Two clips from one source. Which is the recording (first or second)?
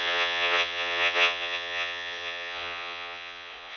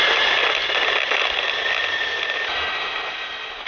second